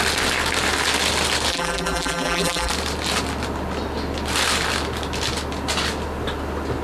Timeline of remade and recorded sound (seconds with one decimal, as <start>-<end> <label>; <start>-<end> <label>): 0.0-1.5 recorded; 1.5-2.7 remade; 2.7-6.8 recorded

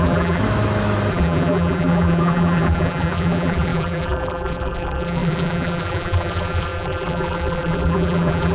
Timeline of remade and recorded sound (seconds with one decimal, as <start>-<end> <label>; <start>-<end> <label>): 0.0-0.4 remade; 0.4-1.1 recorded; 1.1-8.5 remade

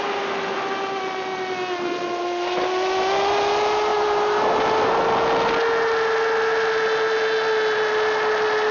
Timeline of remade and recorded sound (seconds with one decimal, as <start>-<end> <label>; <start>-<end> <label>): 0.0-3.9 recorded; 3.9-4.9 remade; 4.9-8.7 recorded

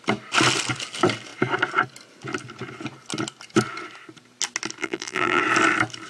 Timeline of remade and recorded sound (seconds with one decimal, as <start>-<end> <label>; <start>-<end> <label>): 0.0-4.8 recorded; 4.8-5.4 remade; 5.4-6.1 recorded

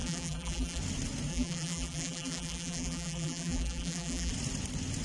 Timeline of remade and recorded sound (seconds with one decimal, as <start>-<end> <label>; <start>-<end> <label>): 0.0-0.8 remade; 0.8-1.3 recorded; 1.3-4.3 remade; 4.3-5.0 recorded

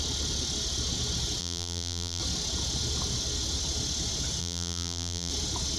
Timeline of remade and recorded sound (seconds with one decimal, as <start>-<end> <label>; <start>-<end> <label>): 0.0-1.4 recorded; 1.4-2.2 remade; 2.2-4.4 recorded; 4.4-5.3 remade; 5.3-5.8 recorded

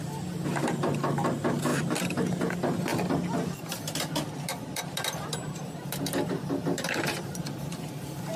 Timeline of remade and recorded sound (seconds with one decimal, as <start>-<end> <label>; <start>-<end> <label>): 0.0-1.7 recorded; 1.7-2.5 remade; 2.5-8.4 recorded